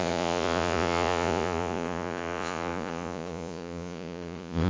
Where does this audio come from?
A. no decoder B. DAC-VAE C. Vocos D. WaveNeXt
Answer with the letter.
C